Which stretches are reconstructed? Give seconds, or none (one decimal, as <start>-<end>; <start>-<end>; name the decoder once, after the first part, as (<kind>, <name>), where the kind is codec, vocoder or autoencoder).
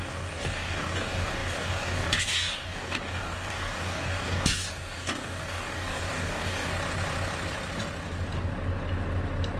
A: 0.0-6.7 (codec, DAC)